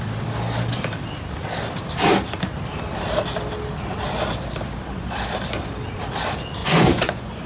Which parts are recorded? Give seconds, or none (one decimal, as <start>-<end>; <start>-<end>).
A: 0.0-6.6